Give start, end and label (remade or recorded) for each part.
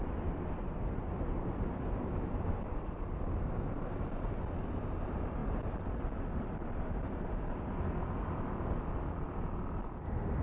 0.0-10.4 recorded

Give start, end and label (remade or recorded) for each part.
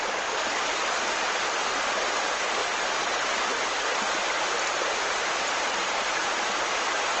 0.0-7.2 recorded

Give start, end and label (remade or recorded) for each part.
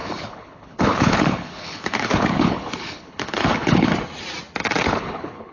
0.0-3.9 remade; 3.9-4.8 recorded; 4.8-5.5 remade